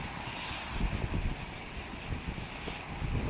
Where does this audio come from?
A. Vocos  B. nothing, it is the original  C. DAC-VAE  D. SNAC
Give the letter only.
B